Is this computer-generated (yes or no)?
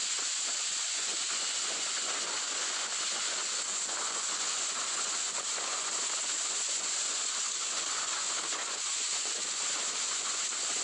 yes